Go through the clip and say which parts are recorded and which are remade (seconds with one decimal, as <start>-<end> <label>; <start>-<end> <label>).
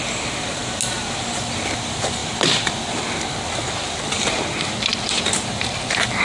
0.0-0.6 remade; 0.6-1.3 recorded; 1.3-4.9 remade; 4.9-5.5 recorded; 5.5-6.2 remade